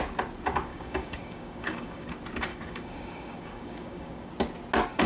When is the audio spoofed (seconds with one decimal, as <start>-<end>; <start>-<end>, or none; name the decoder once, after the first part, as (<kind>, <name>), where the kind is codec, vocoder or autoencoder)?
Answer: 0.7-2.1 (codec, DAC); 2.5-4.3